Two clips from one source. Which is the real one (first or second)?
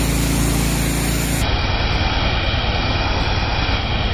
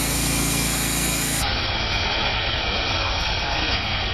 first